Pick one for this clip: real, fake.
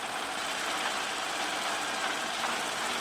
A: real